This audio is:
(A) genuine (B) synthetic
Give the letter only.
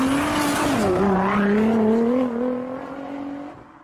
A